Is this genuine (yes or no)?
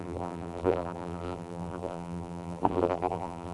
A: no